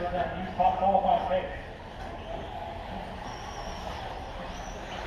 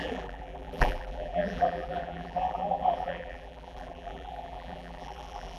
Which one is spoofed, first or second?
second